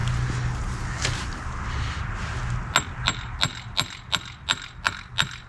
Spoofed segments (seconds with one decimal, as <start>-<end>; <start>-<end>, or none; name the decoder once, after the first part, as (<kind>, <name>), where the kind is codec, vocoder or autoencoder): none